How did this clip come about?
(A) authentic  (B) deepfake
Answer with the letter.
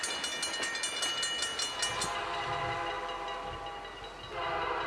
A